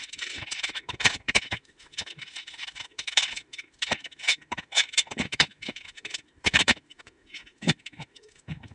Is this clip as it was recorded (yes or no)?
no